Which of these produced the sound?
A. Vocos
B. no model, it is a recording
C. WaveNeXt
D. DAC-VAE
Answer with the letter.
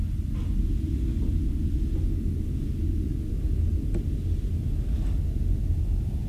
B